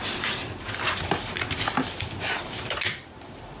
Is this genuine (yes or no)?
no